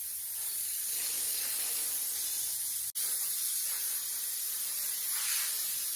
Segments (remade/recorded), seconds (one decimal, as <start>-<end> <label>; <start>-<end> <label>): 0.0-6.0 recorded